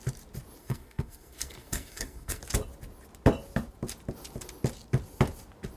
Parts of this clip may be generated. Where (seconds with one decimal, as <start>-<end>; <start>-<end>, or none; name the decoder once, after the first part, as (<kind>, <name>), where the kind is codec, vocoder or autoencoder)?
0.6-2.4 (codec, SNAC)